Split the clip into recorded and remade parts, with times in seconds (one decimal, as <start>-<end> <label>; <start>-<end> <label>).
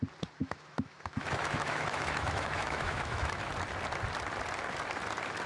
0.0-0.4 recorded; 0.4-3.5 remade; 3.5-5.5 recorded